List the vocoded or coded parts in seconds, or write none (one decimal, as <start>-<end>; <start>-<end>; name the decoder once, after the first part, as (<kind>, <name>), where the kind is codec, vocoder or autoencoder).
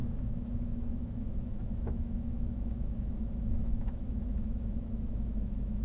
0.0-5.8 (autoencoder, DAC-VAE)